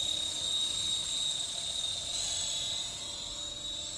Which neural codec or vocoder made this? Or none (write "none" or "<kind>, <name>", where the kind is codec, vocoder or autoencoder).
none